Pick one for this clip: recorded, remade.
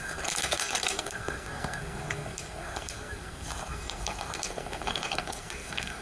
remade